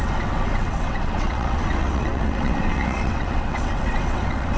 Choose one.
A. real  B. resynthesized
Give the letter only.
B